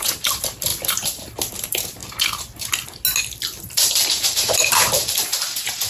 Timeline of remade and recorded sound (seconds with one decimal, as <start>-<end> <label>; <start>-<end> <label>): 0.0-0.7 remade; 0.7-1.5 recorded; 1.5-2.0 remade; 2.0-3.6 recorded; 3.6-5.3 remade; 5.3-5.9 recorded